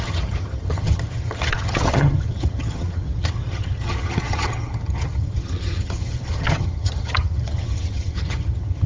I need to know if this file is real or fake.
fake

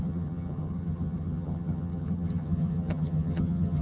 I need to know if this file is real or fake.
fake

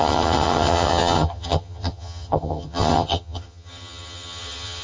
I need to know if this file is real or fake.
fake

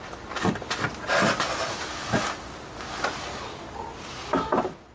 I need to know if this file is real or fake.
real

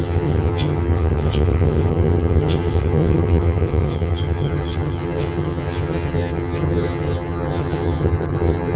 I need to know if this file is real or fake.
fake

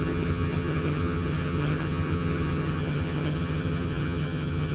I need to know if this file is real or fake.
fake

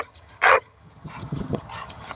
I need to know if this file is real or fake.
fake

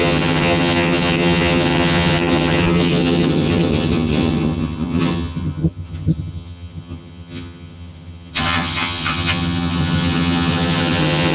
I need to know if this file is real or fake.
fake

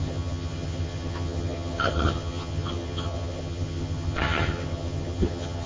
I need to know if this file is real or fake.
fake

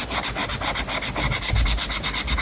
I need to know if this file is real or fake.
real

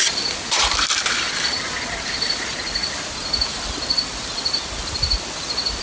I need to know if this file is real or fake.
real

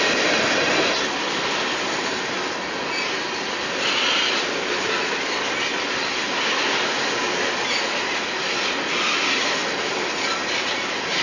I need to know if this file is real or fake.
real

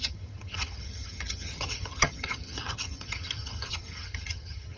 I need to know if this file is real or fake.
fake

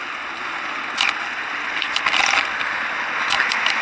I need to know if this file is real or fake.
real